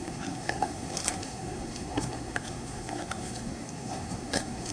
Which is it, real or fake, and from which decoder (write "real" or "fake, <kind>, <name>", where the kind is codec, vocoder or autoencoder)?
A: fake, codec, SNAC